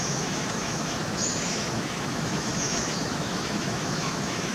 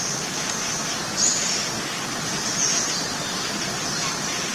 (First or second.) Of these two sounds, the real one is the second